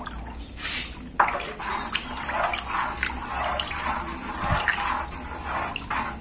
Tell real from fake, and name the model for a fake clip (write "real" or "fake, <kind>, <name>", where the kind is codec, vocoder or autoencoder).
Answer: real